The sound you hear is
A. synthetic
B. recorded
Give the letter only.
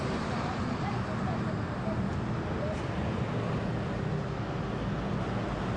B